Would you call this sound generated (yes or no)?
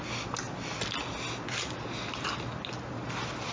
no